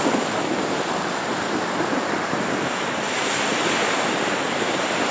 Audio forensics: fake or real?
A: real